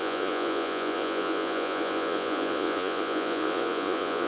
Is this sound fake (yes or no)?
yes